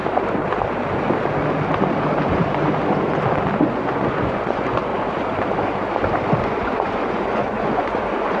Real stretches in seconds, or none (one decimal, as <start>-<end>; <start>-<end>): 0.0-3.6; 4.9-6.4